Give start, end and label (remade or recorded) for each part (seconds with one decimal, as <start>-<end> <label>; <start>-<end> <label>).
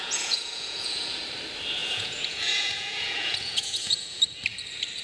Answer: 0.0-1.2 remade; 1.2-1.8 recorded; 1.8-4.2 remade; 4.2-5.0 recorded